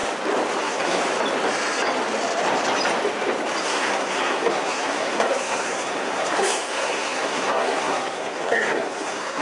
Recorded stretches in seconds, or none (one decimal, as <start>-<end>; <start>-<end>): 0.0-0.6; 1.0-3.6